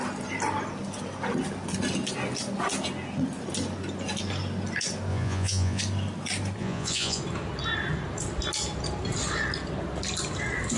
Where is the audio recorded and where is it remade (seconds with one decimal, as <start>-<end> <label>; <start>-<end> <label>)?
0.0-5.1 recorded; 5.1-5.8 remade; 5.8-6.6 recorded; 6.6-7.2 remade; 7.2-10.8 recorded